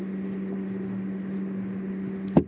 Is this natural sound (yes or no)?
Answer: yes